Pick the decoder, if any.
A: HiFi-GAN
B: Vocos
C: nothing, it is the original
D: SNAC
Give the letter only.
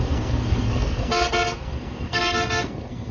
D